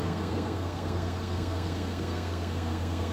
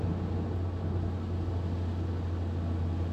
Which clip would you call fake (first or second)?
first